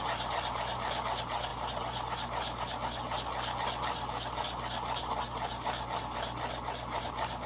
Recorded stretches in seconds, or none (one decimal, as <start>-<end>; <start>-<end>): 0.0-7.5